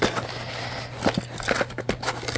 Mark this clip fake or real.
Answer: real